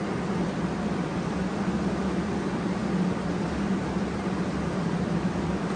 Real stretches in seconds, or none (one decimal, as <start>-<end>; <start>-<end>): 1.4-2.0; 2.8-5.0